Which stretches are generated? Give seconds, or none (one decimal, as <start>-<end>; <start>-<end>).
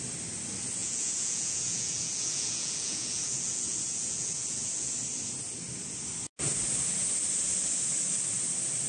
0.8-4.9